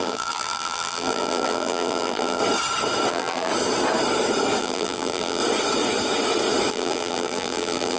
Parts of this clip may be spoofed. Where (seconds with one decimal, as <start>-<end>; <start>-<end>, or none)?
0.0-2.4; 3.1-3.5; 4.6-5.4; 6.7-8.0